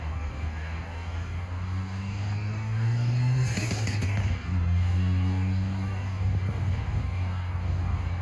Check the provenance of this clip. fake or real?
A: fake